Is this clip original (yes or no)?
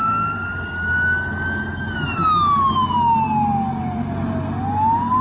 yes